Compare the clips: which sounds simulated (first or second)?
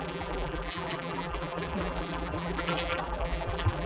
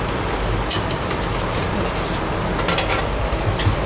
first